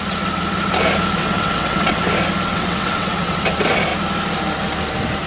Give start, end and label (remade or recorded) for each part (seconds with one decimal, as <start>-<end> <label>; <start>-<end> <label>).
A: 0.0-1.2 recorded; 1.2-2.1 remade; 2.1-2.5 recorded; 2.5-3.4 remade; 3.4-5.3 recorded